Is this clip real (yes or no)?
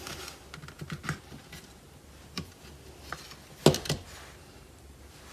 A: yes